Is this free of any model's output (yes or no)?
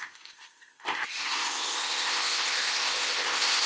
no